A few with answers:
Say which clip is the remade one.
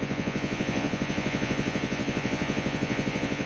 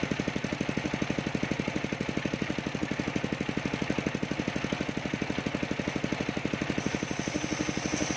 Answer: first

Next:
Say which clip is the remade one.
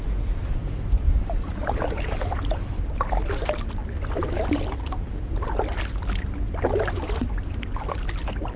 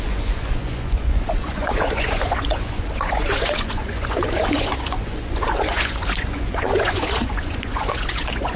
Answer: second